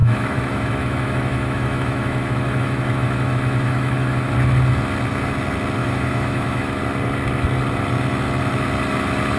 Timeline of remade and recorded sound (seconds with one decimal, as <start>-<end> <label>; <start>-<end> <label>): 0.0-4.3 remade; 4.3-5.8 recorded; 5.8-6.8 remade; 6.8-9.4 recorded